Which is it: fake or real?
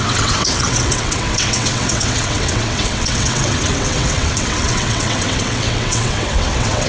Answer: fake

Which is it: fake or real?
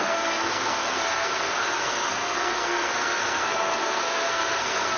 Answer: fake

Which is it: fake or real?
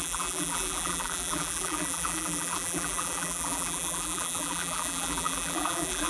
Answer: fake